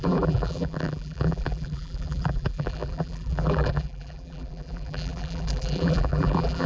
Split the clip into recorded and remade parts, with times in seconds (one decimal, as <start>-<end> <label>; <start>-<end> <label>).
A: 0.0-6.7 remade